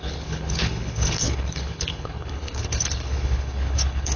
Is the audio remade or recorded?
remade